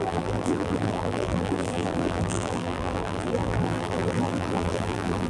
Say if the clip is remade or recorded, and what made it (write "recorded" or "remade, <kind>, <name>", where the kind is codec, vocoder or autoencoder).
remade, vocoder, BigVGAN v2